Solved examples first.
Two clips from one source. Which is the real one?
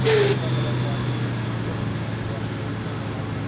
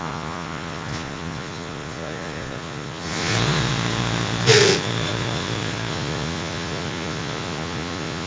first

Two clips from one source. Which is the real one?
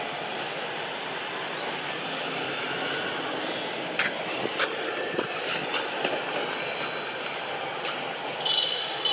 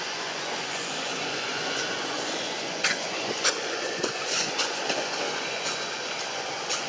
first